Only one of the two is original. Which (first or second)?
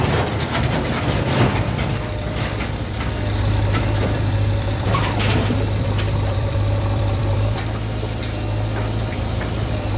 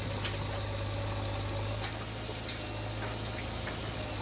second